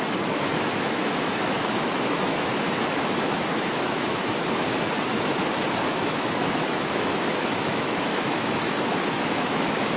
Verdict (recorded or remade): remade